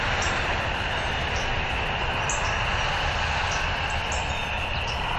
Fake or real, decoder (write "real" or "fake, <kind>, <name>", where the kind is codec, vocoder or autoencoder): real